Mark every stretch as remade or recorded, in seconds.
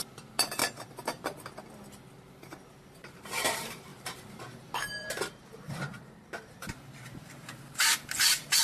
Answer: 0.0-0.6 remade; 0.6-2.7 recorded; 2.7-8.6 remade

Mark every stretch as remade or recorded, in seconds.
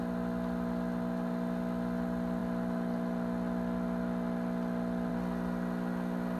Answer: 0.0-6.4 recorded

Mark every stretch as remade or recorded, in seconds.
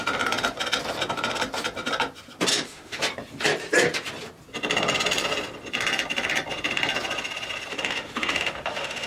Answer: 0.0-2.5 recorded; 2.5-3.0 remade; 3.0-7.7 recorded; 7.7-9.1 remade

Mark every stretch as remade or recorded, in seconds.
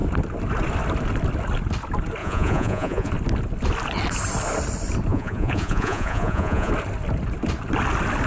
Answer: 0.0-2.2 recorded; 2.2-3.1 remade; 3.1-5.1 recorded; 5.1-6.7 remade; 6.7-8.3 recorded